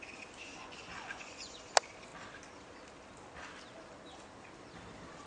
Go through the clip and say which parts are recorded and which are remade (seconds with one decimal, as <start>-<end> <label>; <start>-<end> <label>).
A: 0.0-0.5 recorded; 0.5-1.6 remade; 1.6-5.3 recorded

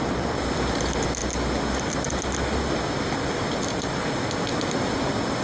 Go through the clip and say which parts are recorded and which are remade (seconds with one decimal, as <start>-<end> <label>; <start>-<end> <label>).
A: 0.0-5.4 recorded